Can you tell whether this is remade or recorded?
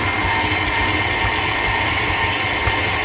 recorded